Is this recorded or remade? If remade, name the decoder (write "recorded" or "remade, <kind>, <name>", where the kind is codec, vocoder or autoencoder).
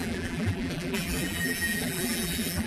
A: remade, vocoder, BigVGAN v2